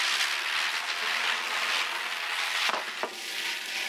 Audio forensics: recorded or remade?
recorded